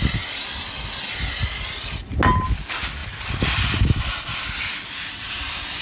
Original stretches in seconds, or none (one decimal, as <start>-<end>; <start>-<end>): 0.0-3.0; 4.9-5.8